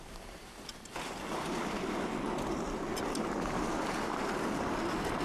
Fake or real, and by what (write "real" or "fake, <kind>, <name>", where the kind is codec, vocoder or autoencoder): real